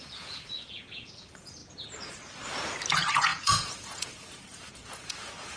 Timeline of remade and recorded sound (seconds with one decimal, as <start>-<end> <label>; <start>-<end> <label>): 0.0-1.6 remade; 1.6-2.9 recorded; 2.9-5.6 remade